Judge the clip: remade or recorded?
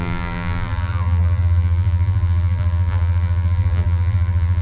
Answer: remade